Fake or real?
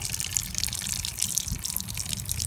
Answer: real